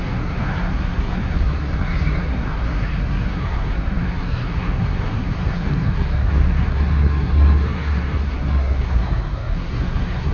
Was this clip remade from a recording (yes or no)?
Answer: yes